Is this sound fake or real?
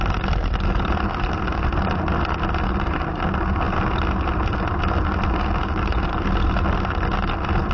real